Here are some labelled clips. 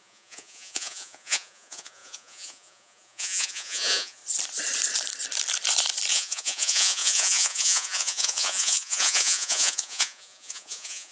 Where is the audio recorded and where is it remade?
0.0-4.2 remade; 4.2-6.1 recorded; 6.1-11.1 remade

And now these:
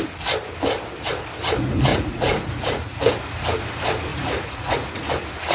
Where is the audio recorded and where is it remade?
0.0-1.9 recorded; 1.9-3.1 remade; 3.1-4.1 recorded; 4.1-5.1 remade; 5.1-5.5 recorded

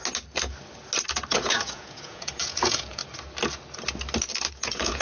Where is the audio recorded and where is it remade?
0.0-1.3 recorded; 1.3-3.0 remade; 3.0-4.5 recorded; 4.5-5.0 remade

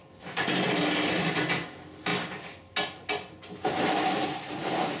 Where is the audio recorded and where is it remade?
0.0-5.0 recorded

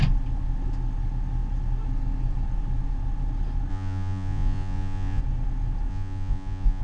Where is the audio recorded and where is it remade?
0.0-3.7 recorded; 3.7-5.2 remade; 5.2-5.9 recorded; 5.9-6.8 remade

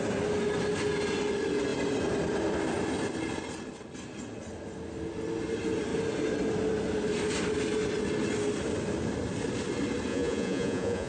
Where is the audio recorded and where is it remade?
0.0-10.1 recorded; 10.1-11.1 remade